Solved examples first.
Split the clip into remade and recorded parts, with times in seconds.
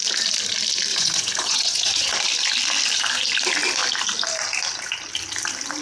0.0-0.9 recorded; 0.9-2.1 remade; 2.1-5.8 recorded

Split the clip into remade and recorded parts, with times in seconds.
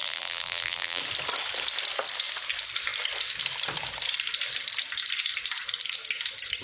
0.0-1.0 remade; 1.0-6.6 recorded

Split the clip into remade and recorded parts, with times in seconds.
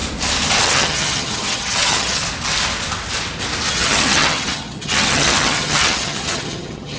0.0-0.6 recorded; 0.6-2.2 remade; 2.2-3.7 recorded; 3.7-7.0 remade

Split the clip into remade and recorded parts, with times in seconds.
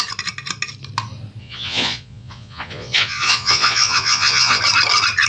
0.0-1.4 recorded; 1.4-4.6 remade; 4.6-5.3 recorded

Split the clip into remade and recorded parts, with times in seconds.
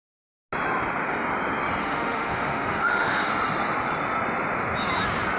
0.0-1.8 recorded; 1.8-3.3 remade; 3.3-5.4 recorded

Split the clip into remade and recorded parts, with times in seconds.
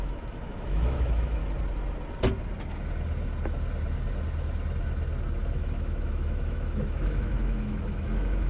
0.0-1.4 remade; 1.4-5.5 recorded; 5.5-8.5 remade